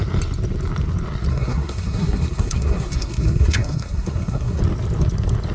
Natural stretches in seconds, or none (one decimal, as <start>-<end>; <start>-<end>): 0.0-1.3; 4.6-5.5